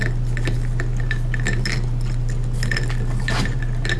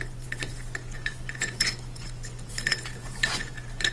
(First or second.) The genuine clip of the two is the first